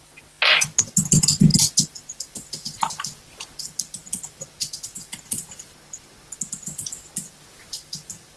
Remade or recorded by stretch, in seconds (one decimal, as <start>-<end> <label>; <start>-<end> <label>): 0.0-8.4 recorded